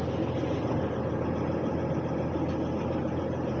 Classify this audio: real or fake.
real